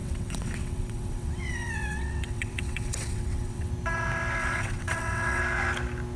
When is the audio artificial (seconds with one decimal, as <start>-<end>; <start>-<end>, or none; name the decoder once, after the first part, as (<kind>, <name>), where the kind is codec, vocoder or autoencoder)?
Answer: 0.0-3.7 (vocoder, WaveNeXt); 4.4-5.4